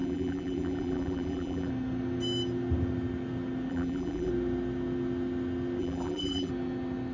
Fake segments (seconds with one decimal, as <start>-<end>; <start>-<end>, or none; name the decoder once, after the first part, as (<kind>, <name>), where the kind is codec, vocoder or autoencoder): 0.0-1.7 (vocoder, BigVGAN v2); 3.7-4.3; 5.8-6.5